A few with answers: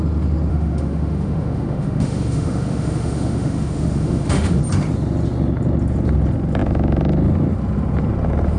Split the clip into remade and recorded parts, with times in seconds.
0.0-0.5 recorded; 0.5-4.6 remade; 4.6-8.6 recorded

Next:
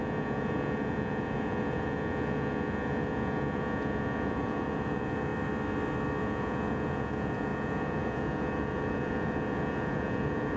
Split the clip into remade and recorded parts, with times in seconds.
0.0-5.3 remade; 5.3-6.2 recorded; 6.2-10.6 remade

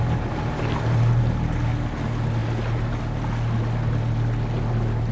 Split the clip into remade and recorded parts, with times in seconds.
0.0-5.1 recorded

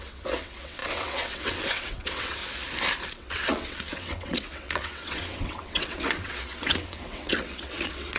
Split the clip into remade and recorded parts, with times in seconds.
0.0-2.4 remade; 2.4-3.1 recorded; 3.1-8.2 remade

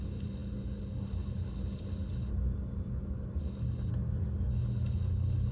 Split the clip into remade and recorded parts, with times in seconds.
0.0-2.3 remade; 2.3-3.4 recorded; 3.4-3.9 remade; 3.9-4.5 recorded; 4.5-5.5 remade

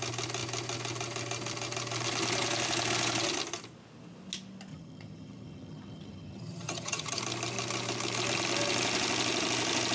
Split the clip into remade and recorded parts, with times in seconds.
0.0-4.7 recorded; 4.7-7.2 remade; 7.2-9.9 recorded

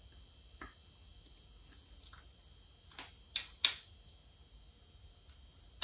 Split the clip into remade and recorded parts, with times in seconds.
0.0-5.8 recorded